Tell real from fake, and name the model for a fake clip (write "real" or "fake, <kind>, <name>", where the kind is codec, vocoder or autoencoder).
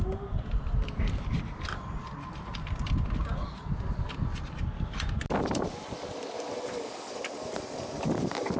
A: real